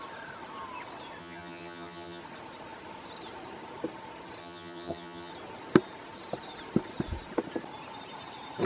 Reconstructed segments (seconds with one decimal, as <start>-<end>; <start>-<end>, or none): 1.2-2.2; 4.4-5.3